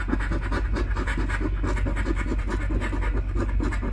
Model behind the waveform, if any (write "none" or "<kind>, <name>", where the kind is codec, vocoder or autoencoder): none